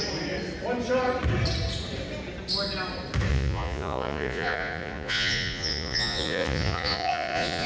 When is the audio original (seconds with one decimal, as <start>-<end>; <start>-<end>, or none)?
0.0-3.3